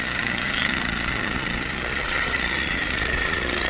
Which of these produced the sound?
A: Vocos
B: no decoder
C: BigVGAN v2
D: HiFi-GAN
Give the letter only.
A